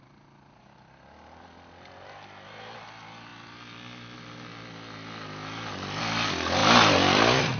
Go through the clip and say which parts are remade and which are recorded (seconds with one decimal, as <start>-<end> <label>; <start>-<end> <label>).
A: 0.0-6.6 recorded; 6.6-7.6 remade

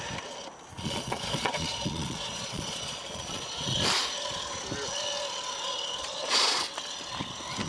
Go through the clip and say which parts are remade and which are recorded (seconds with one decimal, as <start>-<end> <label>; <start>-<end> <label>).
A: 0.0-0.7 recorded; 0.7-3.8 remade; 3.8-6.0 recorded; 6.0-6.6 remade; 6.6-7.7 recorded

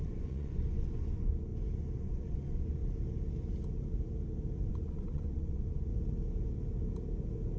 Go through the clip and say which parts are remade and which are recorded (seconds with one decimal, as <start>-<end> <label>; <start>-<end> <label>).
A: 0.0-1.5 remade; 1.5-2.0 recorded; 2.0-2.8 remade; 2.8-4.7 recorded; 4.7-5.9 remade; 5.9-7.6 recorded